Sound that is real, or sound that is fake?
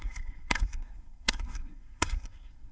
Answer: fake